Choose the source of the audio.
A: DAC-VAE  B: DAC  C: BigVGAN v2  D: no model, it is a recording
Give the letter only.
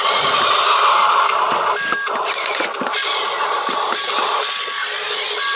D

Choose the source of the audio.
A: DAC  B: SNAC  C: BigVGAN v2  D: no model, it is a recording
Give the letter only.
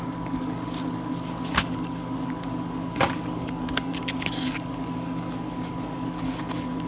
A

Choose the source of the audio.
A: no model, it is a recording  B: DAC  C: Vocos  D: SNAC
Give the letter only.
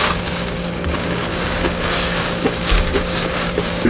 B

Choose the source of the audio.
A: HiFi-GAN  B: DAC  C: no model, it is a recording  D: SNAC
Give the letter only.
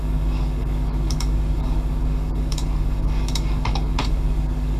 B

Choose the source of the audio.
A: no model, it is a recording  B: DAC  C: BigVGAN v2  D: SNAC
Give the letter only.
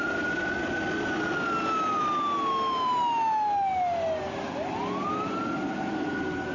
A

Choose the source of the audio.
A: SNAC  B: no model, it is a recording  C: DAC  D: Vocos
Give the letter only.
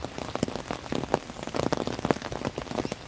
B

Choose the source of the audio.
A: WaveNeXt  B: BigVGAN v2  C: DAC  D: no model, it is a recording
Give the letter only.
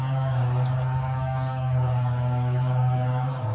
C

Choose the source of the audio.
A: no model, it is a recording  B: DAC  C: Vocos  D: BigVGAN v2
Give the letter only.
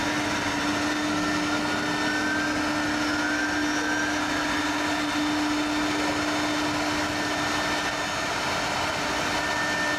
A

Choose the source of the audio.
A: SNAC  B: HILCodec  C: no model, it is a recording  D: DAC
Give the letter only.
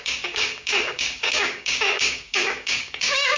D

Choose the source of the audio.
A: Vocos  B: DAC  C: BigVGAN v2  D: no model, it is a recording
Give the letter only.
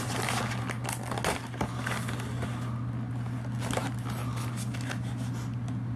D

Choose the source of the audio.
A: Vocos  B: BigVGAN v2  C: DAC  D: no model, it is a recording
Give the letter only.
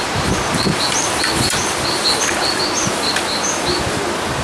D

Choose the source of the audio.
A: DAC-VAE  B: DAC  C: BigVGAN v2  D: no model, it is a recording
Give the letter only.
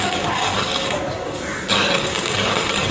B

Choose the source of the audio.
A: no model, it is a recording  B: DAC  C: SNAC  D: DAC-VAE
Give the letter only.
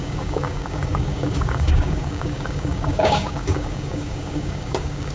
B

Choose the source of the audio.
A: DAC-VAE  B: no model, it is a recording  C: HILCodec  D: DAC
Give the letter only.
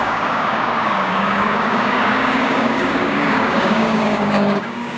D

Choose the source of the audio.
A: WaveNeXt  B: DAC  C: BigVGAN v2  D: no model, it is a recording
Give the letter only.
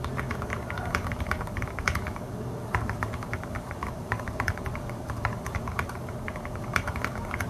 B